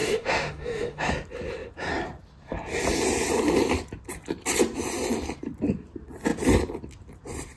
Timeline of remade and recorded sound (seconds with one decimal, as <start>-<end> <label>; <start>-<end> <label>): 0.0-1.1 remade; 1.1-7.6 recorded